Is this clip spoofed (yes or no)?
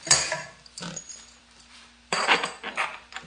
yes